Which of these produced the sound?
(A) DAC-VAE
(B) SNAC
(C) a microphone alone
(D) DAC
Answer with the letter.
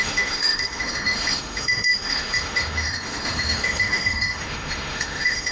A